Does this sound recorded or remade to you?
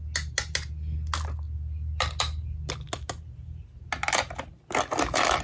recorded